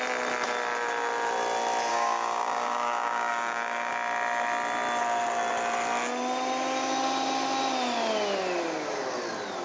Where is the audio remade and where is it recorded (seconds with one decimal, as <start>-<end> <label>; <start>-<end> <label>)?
0.0-1.9 recorded; 1.9-3.9 remade; 3.9-9.6 recorded